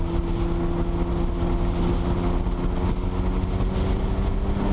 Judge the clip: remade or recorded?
recorded